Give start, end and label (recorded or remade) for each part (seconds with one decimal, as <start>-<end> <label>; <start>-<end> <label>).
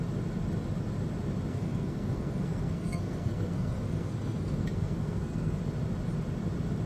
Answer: 0.0-1.5 recorded; 1.5-5.6 remade; 5.6-6.9 recorded